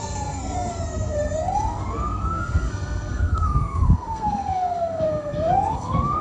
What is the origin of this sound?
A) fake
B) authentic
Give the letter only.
A